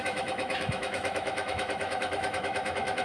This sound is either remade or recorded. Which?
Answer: remade